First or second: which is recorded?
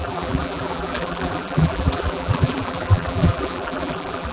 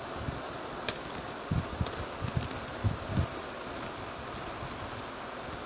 second